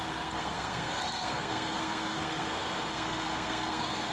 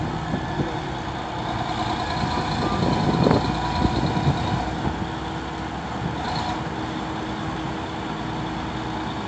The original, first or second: second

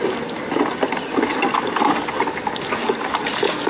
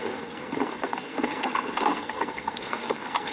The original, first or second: first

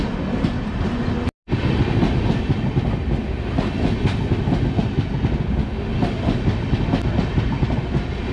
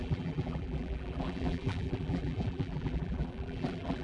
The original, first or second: first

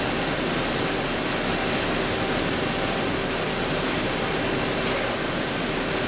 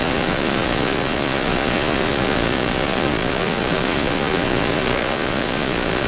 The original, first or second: first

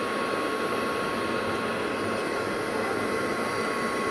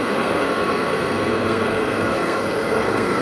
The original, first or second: first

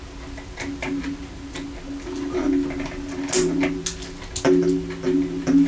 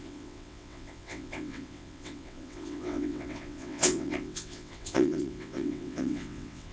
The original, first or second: first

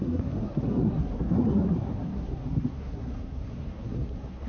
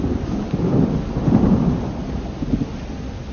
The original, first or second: second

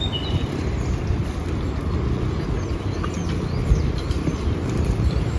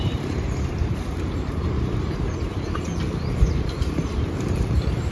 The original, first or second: first